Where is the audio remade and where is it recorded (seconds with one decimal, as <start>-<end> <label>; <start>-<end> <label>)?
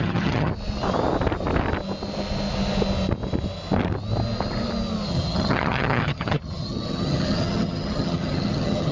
0.0-0.5 remade; 0.5-5.1 recorded; 5.1-8.9 remade